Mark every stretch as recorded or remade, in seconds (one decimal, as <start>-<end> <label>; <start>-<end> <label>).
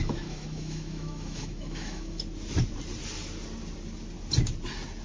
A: 0.0-2.2 remade; 2.2-5.0 recorded